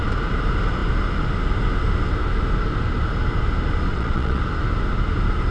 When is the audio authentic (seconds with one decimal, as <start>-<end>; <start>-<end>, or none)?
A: 0.0-3.9; 4.4-5.5